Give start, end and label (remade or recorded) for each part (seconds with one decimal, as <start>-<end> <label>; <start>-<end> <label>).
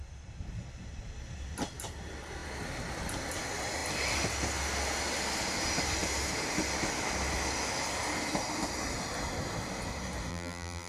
0.0-10.3 recorded; 10.3-10.9 remade